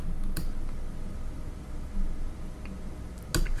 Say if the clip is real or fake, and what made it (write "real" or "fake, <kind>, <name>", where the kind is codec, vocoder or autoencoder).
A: real